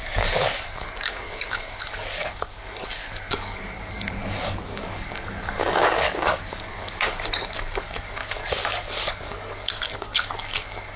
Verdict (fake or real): fake